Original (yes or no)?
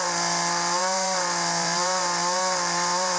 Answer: no